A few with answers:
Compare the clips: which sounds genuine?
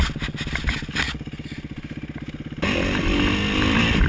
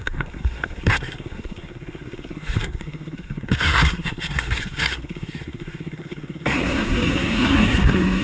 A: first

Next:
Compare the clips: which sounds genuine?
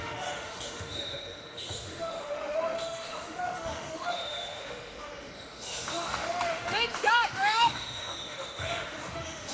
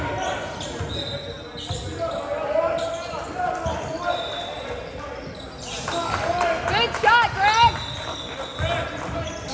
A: second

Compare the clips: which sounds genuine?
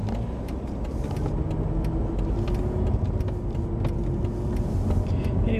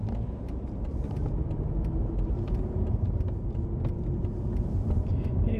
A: first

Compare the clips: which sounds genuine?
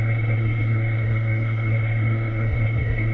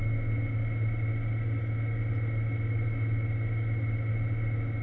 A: second